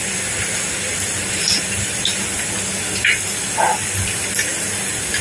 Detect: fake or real real